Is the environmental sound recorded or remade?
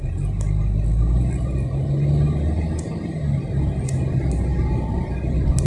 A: recorded